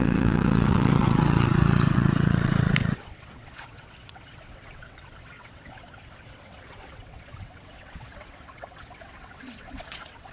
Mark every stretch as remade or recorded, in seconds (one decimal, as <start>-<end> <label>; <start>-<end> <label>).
0.0-10.3 remade